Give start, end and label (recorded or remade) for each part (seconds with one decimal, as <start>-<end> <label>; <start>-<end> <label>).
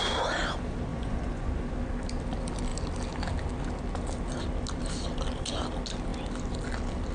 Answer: 0.0-0.9 recorded; 0.9-1.5 remade; 1.5-7.1 recorded